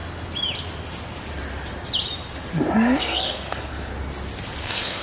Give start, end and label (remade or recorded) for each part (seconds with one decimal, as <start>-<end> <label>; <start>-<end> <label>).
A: 0.0-3.0 recorded; 3.0-3.9 remade; 3.9-4.6 recorded; 4.6-5.0 remade